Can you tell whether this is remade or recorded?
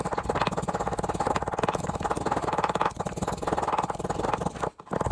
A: recorded